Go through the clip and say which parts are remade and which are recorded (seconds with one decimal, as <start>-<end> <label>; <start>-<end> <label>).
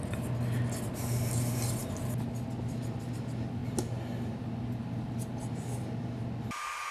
0.0-6.9 recorded